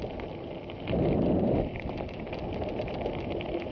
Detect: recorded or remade recorded